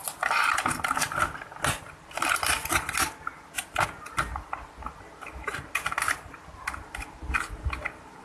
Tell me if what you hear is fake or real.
real